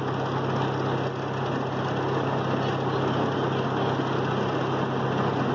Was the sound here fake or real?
real